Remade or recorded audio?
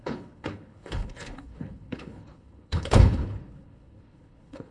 remade